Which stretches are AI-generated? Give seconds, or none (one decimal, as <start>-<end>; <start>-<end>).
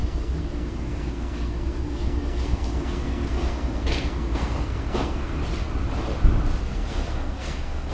0.0-5.4; 6.6-7.9